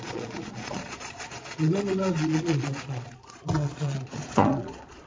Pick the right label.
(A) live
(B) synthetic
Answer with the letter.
B